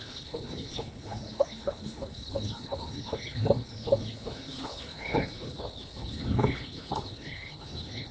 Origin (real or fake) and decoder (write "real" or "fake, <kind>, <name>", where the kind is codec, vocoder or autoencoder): fake, codec, HILCodec